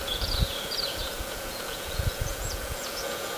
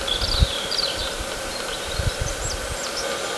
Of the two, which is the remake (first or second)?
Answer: first